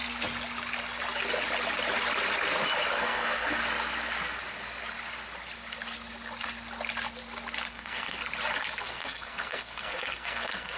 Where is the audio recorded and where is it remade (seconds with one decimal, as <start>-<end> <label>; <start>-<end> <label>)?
0.0-3.0 recorded; 3.0-3.6 remade; 3.6-7.7 recorded; 7.7-8.2 remade; 8.2-8.8 recorded; 8.8-10.8 remade